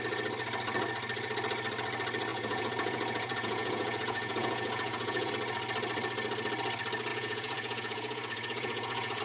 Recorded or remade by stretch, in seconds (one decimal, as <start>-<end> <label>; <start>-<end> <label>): 0.0-2.3 recorded; 2.3-5.3 remade; 5.3-7.1 recorded; 7.1-9.2 remade